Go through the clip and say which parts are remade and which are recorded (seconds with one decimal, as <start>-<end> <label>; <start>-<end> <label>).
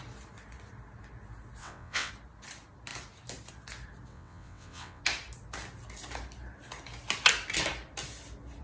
0.0-1.6 recorded; 1.6-2.1 remade; 2.1-4.1 recorded; 4.1-5.0 remade; 5.0-8.6 recorded